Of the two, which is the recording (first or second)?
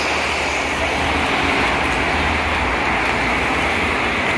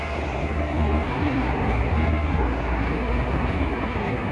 first